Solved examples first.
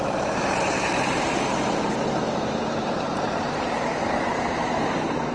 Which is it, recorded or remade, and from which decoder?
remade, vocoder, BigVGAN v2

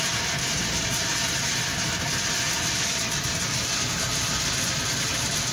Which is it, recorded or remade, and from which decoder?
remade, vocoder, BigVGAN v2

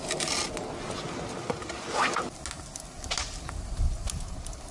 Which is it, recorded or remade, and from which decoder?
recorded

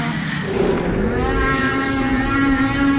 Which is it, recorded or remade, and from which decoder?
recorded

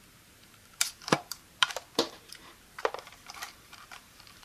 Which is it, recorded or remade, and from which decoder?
remade, vocoder, BigVGAN v2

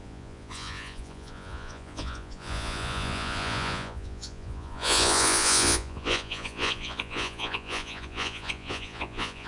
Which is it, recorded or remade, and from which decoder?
remade, vocoder, Vocos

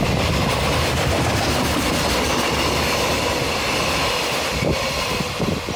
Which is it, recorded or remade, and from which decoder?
recorded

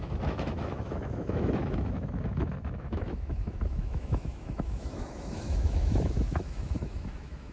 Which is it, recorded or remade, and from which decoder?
remade, autoencoder, DAC-VAE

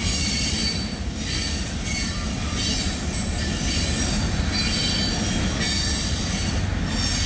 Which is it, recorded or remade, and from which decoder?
recorded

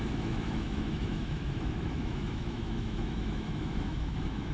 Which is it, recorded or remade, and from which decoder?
remade, autoencoder, DAC-VAE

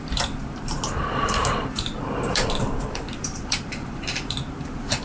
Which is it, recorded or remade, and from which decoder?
remade, vocoder, BigVGAN v2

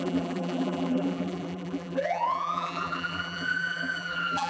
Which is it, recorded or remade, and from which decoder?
remade, vocoder, BigVGAN v2